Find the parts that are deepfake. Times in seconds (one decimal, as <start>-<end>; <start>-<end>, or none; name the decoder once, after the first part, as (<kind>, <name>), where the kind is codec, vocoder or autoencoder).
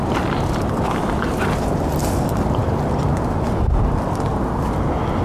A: none